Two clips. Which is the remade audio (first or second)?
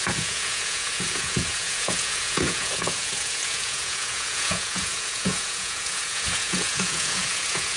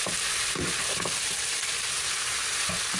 first